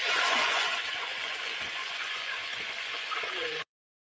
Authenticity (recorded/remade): remade